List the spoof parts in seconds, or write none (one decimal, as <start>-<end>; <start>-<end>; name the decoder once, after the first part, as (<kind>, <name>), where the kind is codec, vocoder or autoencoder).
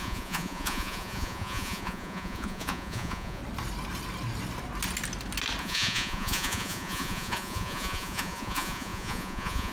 0.0-3.4 (vocoder, Vocos); 5.6-9.7